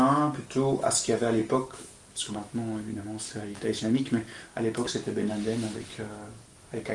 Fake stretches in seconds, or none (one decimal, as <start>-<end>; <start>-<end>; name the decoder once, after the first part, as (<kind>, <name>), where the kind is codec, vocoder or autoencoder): 0.0-6.9 (autoencoder, DAC-VAE)